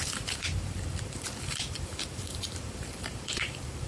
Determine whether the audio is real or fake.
fake